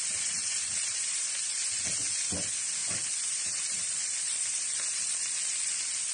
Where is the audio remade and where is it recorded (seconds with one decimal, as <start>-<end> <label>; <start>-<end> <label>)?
0.0-0.5 recorded; 0.5-1.3 remade; 1.3-2.8 recorded; 2.8-6.1 remade